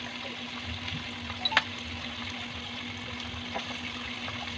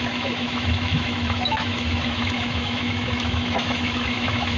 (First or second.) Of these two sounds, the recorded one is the first